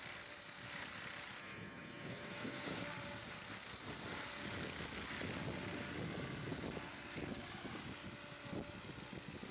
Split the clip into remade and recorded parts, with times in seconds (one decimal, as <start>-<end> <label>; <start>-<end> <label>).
0.0-1.4 recorded; 1.4-2.8 remade; 2.8-9.5 recorded

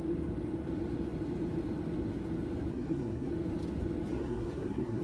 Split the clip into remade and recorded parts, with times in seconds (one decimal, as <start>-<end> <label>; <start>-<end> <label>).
0.0-2.7 recorded; 2.7-3.3 remade; 3.3-4.1 recorded; 4.1-5.0 remade

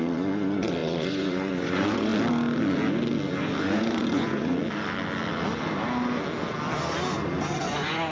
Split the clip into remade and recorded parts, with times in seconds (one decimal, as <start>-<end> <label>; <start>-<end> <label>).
0.0-2.1 remade; 2.1-3.6 recorded; 3.6-4.5 remade; 4.5-7.6 recorded; 7.6-8.1 remade

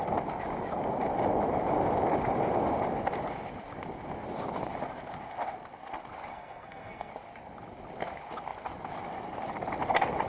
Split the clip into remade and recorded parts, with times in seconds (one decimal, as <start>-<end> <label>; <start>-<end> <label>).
0.0-6.3 recorded; 6.3-7.1 remade; 7.1-10.3 recorded

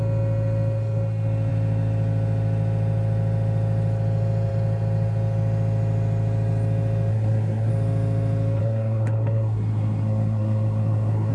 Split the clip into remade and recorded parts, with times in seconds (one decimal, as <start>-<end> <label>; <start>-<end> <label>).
0.0-7.1 recorded; 7.1-7.7 remade; 7.7-8.6 recorded; 8.6-11.3 remade